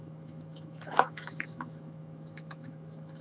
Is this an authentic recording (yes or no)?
no